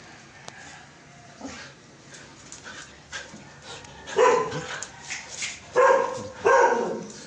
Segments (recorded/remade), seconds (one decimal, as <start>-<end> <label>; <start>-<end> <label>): 0.0-7.3 recorded